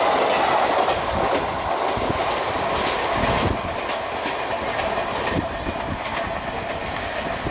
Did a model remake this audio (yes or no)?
no